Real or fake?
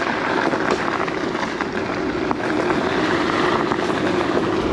real